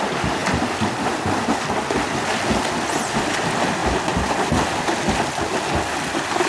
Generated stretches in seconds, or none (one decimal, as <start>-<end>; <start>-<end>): none